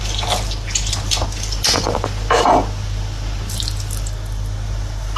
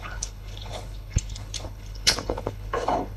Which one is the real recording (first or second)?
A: first